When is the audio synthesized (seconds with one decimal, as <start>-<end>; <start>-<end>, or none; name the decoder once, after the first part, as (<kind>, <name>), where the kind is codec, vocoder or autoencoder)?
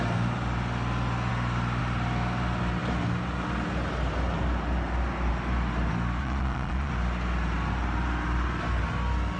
6.2-6.9 (vocoder, Vocos)